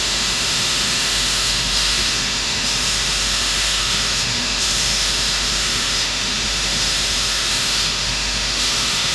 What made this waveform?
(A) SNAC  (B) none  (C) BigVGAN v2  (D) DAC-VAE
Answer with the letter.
D